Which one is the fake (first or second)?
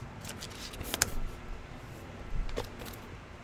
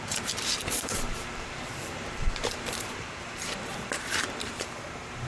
second